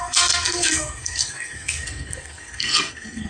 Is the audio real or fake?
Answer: fake